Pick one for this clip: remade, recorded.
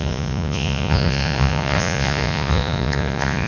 remade